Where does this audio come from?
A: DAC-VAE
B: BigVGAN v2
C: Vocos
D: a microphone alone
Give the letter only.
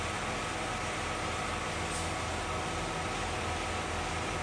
D